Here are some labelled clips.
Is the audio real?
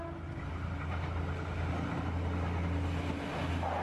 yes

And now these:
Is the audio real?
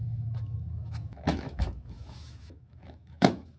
no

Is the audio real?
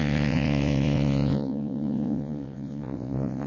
no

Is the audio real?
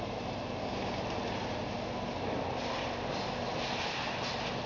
yes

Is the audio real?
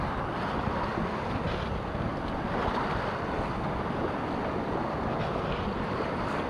yes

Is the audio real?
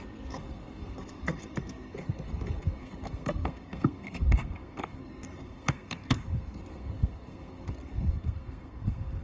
no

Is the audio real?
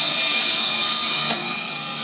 no